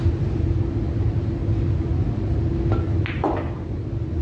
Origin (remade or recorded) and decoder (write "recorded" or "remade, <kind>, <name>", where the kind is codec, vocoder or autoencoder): recorded